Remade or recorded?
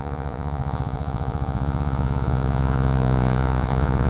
remade